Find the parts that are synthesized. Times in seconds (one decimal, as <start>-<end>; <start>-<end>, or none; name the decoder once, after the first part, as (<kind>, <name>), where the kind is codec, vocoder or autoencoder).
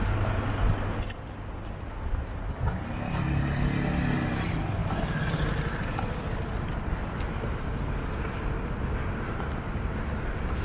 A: none